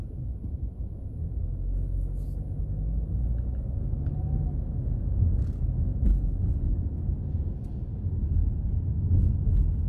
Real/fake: real